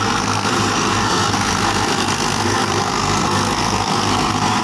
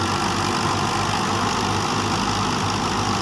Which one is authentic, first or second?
second